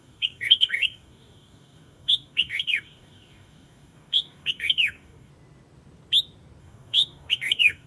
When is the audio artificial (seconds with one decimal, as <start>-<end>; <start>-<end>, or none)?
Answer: 0.0-5.3; 6.6-7.9